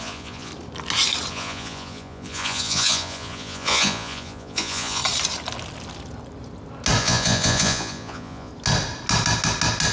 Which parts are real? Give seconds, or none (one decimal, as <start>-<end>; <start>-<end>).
0.5-1.3; 5.0-7.0; 8.5-9.9